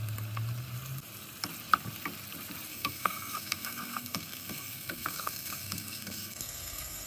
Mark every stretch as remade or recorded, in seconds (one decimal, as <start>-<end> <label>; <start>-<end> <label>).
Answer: 0.0-2.7 recorded; 2.7-7.1 remade